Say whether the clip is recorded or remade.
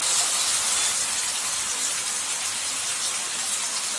recorded